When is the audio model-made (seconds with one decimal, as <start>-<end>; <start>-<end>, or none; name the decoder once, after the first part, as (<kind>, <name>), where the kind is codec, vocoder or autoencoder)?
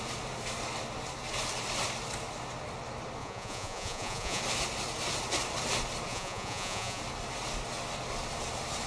3.2-4.4 (vocoder, Vocos); 6.1-7.0